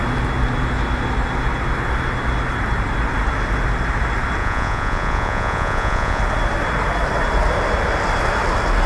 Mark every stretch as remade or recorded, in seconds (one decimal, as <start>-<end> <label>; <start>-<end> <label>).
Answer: 0.0-4.4 recorded; 4.4-6.2 remade; 6.2-8.9 recorded